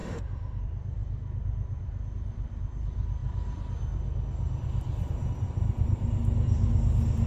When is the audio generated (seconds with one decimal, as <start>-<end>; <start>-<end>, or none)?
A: 0.0-0.6

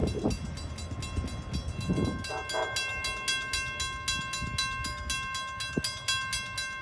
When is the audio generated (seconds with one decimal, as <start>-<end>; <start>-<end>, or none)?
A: none

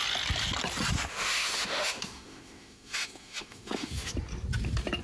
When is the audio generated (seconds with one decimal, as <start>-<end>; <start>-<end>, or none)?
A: 1.1-4.1

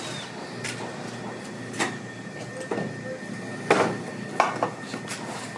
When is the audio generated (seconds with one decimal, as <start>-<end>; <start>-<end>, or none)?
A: none

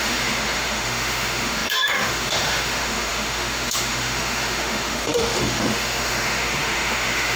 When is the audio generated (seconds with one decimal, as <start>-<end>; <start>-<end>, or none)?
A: 0.0-7.4

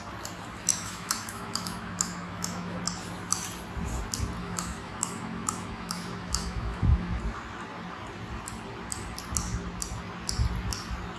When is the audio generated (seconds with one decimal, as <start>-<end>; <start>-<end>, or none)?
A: 0.7-2.8; 4.4-7.2